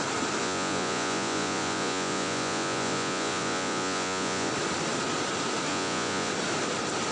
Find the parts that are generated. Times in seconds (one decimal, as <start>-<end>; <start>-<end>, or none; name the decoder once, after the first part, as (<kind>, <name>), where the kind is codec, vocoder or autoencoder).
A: 0.4-4.5 (vocoder, Vocos); 5.7-6.3